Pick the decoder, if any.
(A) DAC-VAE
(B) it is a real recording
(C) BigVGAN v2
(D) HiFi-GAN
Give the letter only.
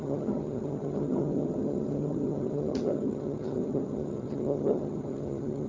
D